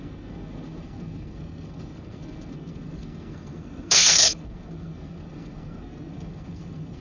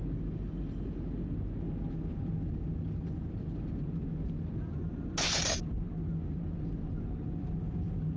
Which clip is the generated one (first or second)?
first